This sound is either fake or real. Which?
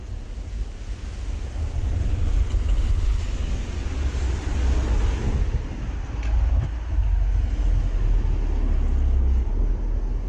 real